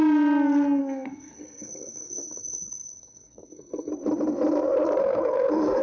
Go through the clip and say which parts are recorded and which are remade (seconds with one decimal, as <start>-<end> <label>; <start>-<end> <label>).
0.0-0.8 recorded; 0.8-3.9 remade; 3.9-5.0 recorded; 5.0-5.8 remade